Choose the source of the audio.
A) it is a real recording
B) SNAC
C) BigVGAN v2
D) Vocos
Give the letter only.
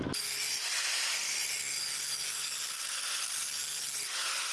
A